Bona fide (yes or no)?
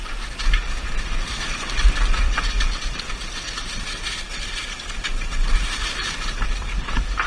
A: no